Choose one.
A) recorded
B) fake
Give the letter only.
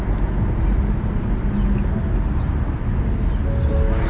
A